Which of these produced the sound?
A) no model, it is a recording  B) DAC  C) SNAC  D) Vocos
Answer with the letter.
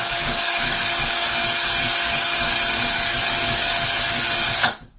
B